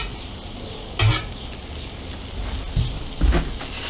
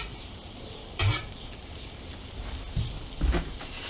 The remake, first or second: second